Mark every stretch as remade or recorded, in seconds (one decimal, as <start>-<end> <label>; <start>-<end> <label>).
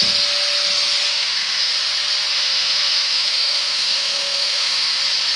0.0-1.1 recorded; 1.1-1.7 remade; 1.7-2.3 recorded; 2.3-5.0 remade; 5.0-5.4 recorded